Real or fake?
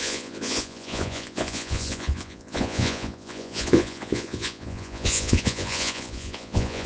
fake